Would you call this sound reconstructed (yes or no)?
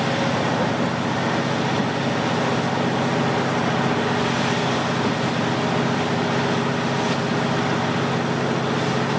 no